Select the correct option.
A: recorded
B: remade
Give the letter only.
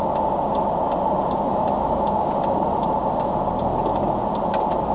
A